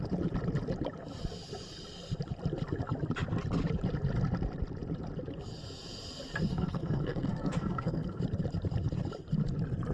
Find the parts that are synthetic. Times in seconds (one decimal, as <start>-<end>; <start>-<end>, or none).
6.5-8.2